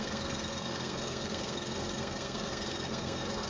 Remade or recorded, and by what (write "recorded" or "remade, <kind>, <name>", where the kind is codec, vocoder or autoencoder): remade, codec, SNAC